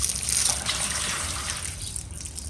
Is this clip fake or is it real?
real